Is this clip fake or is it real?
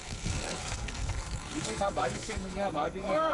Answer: fake